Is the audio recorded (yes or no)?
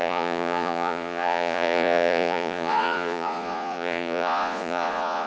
no